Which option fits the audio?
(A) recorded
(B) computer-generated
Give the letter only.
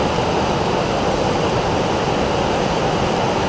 A